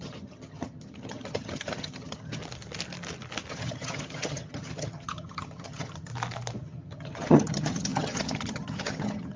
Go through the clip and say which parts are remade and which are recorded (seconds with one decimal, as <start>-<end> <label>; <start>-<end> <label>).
0.0-2.4 remade; 2.4-3.5 recorded; 3.5-6.1 remade; 6.1-6.6 recorded; 6.6-9.4 remade